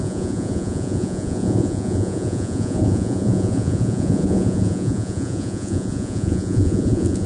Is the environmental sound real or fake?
fake